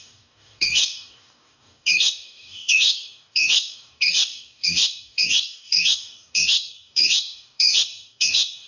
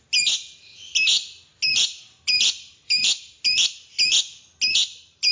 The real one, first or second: second